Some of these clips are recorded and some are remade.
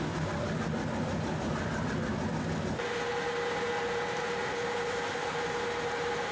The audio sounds recorded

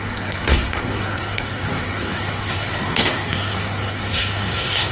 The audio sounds remade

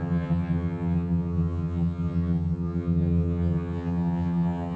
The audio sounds remade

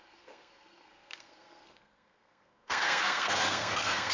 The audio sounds remade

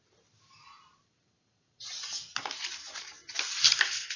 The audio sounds recorded